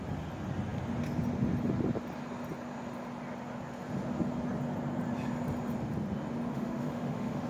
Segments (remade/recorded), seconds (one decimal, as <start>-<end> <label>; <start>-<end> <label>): 0.0-6.5 recorded; 6.5-7.5 remade